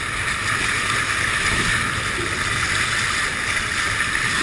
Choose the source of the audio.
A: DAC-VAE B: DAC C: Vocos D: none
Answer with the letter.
D